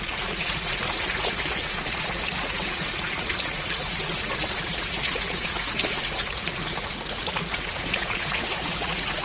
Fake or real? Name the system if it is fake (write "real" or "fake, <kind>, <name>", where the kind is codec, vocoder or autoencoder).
fake, vocoder, Vocos